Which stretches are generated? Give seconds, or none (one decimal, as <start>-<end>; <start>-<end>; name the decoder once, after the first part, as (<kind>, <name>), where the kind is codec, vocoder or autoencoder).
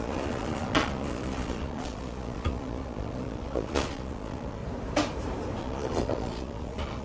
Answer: 0.0-4.6 (vocoder, Vocos); 5.6-7.0